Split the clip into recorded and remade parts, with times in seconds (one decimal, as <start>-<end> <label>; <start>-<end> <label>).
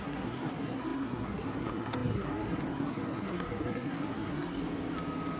0.0-4.6 remade; 4.6-5.4 recorded